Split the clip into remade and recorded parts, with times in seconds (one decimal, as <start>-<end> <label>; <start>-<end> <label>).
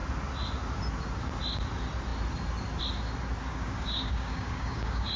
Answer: 0.0-3.5 recorded; 3.5-5.2 remade